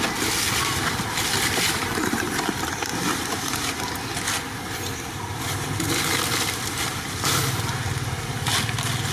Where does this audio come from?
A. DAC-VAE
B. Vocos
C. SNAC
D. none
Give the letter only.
D